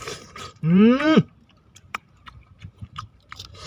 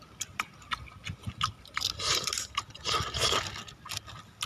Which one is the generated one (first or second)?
first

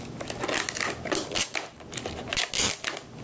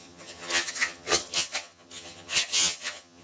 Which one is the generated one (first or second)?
second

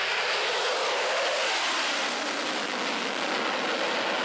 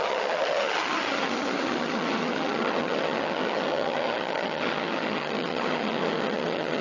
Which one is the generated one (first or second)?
second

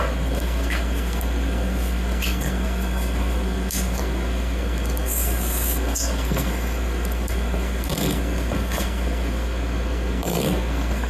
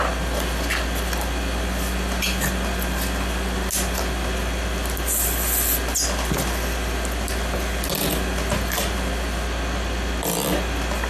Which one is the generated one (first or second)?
first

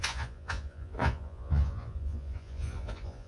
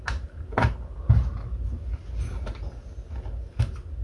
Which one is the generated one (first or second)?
first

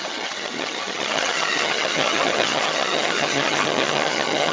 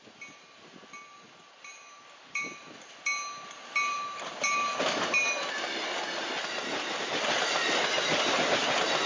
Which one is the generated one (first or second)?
first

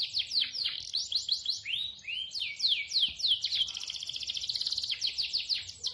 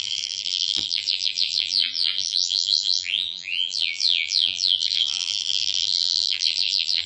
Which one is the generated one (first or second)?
second